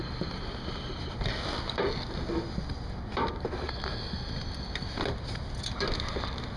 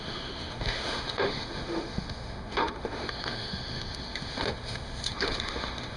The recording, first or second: first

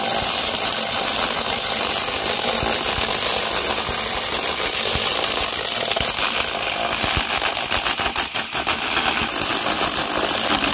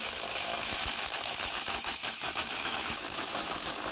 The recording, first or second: first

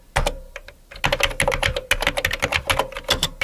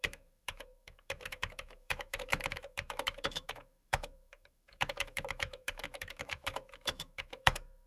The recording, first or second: first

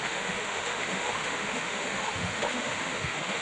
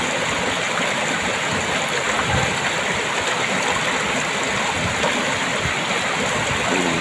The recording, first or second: second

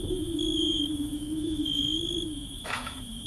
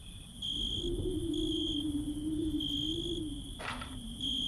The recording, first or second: second